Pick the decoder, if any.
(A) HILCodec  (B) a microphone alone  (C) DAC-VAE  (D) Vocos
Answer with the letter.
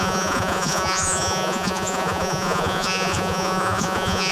D